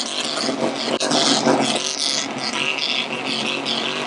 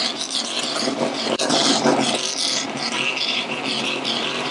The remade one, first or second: second